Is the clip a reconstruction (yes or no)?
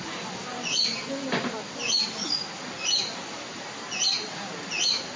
no